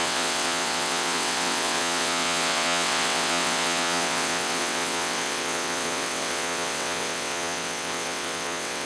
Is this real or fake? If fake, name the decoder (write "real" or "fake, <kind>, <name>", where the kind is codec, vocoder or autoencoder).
fake, vocoder, WaveNeXt